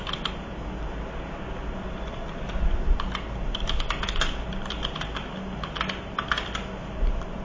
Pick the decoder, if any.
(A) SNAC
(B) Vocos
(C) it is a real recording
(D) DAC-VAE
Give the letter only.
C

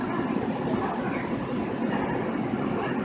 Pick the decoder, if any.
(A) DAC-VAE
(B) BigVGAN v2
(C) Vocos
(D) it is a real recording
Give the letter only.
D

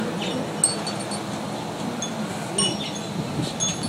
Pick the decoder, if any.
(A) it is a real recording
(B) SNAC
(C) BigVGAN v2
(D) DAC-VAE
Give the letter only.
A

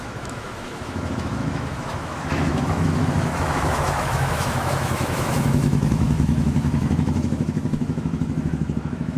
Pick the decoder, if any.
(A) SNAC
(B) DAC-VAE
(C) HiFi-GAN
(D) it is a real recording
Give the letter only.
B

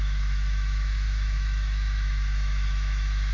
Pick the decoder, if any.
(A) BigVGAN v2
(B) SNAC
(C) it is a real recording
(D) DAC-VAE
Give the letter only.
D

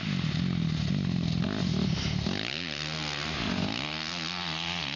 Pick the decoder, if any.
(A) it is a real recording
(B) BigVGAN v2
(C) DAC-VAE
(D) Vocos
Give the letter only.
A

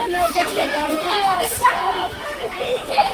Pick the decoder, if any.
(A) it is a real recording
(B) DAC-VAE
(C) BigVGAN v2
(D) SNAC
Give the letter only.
B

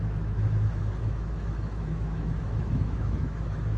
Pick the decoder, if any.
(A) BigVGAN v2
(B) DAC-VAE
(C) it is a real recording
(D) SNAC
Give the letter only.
B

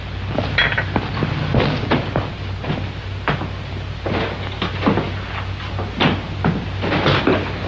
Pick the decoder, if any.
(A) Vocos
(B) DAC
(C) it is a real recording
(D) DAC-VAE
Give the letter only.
C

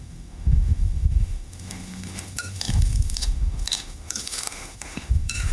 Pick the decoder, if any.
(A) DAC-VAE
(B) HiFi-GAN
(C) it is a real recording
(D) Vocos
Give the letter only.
A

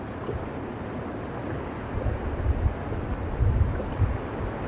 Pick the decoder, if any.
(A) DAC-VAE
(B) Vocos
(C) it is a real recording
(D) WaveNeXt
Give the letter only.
C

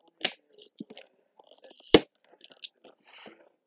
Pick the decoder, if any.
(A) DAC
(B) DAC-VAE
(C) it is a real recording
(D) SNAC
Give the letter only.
C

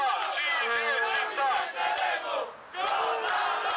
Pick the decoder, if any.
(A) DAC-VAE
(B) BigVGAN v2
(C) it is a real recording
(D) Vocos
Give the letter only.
C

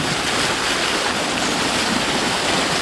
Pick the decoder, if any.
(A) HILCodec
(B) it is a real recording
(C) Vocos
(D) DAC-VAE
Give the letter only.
B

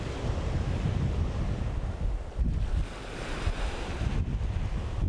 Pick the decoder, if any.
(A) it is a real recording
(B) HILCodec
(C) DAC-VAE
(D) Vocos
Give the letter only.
A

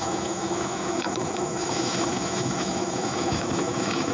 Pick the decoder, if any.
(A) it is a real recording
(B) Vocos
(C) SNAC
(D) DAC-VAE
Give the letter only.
D